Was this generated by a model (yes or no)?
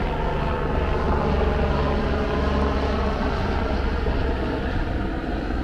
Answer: no